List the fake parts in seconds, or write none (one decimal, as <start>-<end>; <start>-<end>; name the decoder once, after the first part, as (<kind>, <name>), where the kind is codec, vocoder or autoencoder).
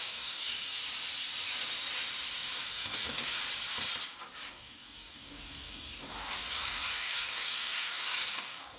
0.0-0.8 (codec, DAC); 2.7-3.4; 4.5-8.8